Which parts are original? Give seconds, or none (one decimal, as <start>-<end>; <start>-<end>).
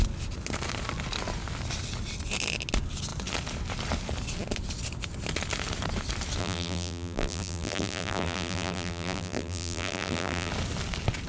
0.0-6.4; 10.5-11.3